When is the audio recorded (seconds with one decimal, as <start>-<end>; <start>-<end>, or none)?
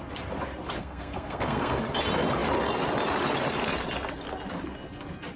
0.0-0.8; 1.8-5.4